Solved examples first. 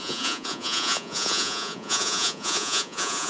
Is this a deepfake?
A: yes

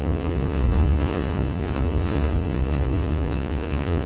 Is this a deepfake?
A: yes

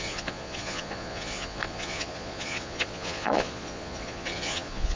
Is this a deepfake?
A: yes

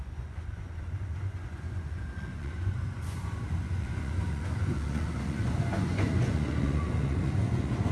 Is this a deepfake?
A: yes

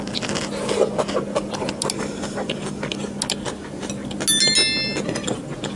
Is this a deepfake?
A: no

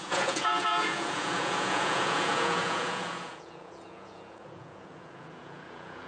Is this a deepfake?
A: yes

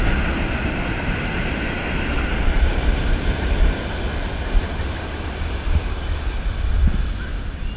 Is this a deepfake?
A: no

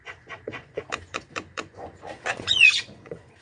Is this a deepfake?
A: yes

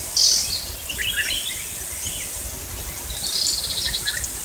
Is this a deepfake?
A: no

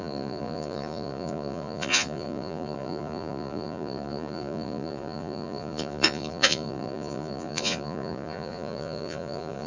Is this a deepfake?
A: yes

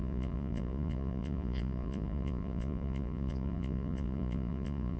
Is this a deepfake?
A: yes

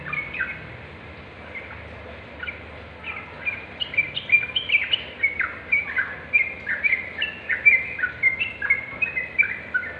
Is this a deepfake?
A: no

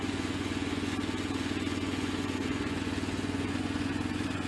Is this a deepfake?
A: yes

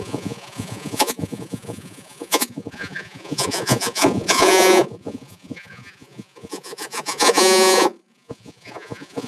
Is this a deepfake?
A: yes